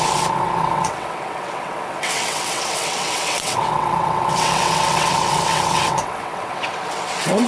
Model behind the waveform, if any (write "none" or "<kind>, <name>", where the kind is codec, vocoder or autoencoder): vocoder, WaveNeXt